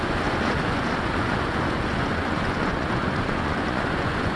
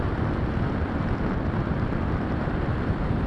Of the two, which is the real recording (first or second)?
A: second